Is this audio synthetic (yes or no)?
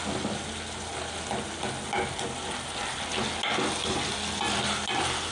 no